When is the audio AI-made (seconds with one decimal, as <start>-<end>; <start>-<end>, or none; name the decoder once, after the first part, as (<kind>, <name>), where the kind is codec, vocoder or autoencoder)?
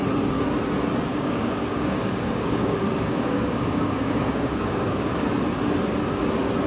1.1-5.1 (codec, DAC)